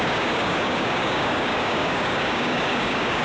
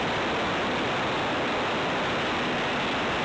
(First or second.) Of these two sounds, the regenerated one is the first